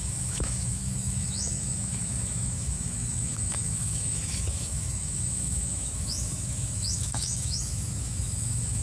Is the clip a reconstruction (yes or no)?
yes